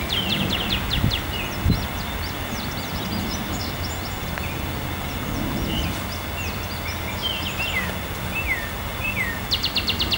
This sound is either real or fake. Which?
real